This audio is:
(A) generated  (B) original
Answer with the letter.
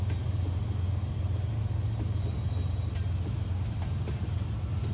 B